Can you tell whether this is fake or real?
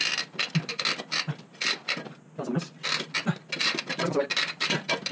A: real